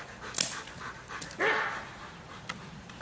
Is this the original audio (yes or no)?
yes